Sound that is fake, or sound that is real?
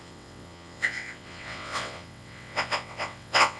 fake